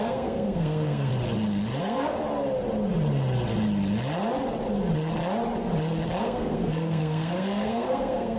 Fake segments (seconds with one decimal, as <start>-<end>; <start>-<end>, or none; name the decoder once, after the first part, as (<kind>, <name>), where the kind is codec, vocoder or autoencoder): 0.0-1.1 (codec, SNAC); 1.8-2.2; 6.2-8.4